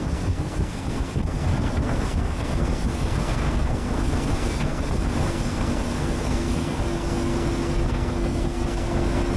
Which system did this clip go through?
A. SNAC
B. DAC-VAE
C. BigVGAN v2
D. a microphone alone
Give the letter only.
A